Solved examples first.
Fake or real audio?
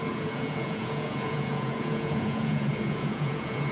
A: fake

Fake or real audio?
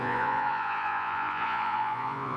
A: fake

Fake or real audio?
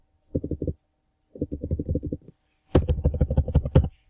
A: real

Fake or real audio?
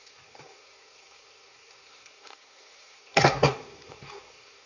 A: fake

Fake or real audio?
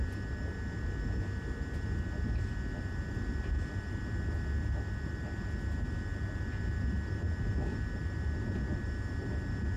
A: real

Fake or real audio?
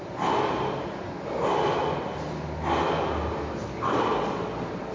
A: real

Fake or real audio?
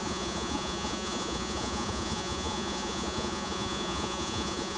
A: fake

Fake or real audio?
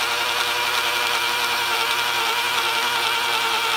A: fake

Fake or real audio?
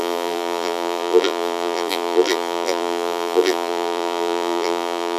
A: fake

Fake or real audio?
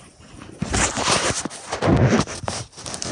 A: real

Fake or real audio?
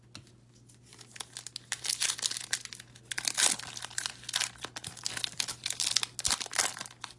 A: real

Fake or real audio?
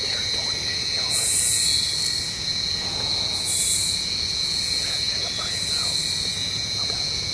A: fake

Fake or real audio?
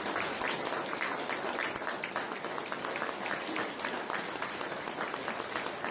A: real